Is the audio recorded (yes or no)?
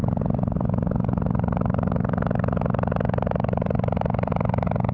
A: no